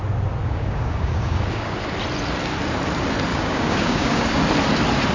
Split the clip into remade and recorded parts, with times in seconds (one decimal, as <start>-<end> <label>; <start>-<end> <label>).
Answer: 0.0-0.4 recorded; 0.4-1.7 remade; 1.7-3.3 recorded; 3.3-4.4 remade; 4.4-5.1 recorded